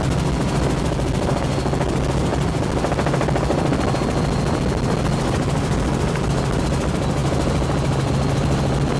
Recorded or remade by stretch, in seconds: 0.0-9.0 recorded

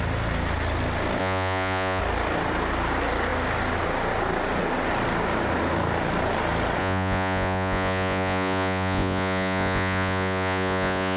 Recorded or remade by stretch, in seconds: 0.0-1.2 recorded; 1.2-2.0 remade; 2.0-6.8 recorded; 6.8-11.2 remade

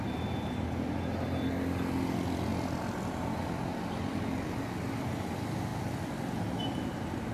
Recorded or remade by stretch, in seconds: 0.0-2.5 recorded; 2.5-3.4 remade; 3.4-5.7 recorded; 5.7-6.6 remade; 6.6-7.3 recorded

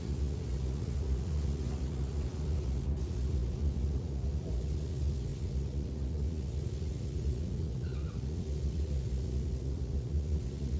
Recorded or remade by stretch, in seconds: 0.0-10.8 remade

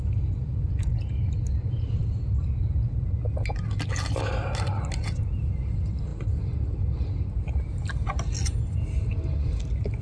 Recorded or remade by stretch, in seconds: 0.0-10.0 recorded

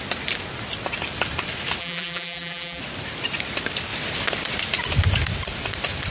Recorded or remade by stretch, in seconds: 0.0-1.8 recorded; 1.8-2.8 remade; 2.8-6.1 recorded